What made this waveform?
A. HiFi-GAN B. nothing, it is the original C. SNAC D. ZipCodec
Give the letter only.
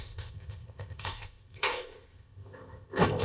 D